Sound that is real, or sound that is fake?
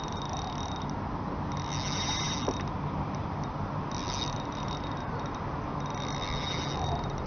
real